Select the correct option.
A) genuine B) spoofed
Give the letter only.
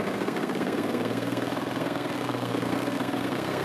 B